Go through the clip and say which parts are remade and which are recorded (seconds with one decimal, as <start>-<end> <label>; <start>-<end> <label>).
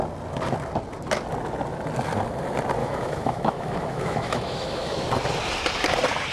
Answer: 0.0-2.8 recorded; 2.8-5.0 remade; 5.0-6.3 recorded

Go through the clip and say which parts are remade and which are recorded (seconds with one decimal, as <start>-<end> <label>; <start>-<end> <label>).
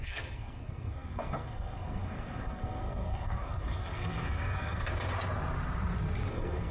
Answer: 0.0-4.9 remade; 4.9-6.3 recorded; 6.3-6.7 remade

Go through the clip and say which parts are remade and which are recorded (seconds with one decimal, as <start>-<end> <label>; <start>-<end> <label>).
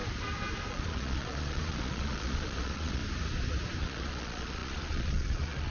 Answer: 0.0-0.7 recorded; 0.7-3.0 remade; 3.0-3.8 recorded; 3.8-5.7 remade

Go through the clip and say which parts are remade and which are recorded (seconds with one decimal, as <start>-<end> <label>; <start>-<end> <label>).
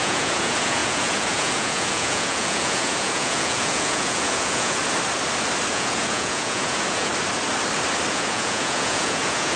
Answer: 0.0-4.8 remade; 4.8-5.7 recorded; 5.7-7.1 remade; 7.1-8.1 recorded; 8.1-9.6 remade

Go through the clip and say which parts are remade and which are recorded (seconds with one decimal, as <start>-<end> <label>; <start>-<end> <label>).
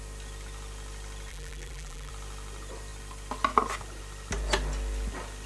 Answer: 0.0-1.3 recorded; 1.3-2.1 remade; 2.1-5.5 recorded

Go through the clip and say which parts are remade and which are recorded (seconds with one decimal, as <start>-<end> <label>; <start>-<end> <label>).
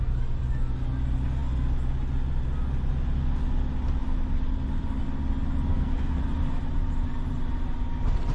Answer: 0.0-5.7 recorded; 5.7-6.2 remade; 6.2-8.3 recorded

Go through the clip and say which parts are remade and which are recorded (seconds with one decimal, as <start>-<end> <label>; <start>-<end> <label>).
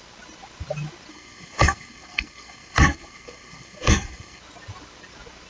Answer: 0.0-1.1 recorded; 1.1-4.4 remade; 4.4-5.5 recorded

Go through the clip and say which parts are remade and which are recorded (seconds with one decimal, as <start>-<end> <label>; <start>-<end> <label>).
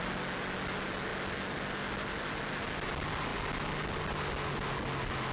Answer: 0.0-5.3 recorded